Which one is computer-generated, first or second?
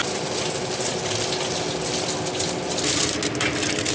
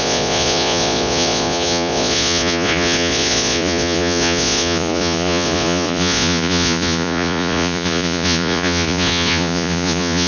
second